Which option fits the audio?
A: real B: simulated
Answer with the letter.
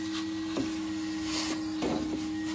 A